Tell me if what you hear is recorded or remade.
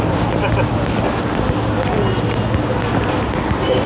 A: recorded